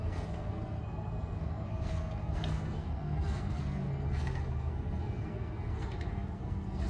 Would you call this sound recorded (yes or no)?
no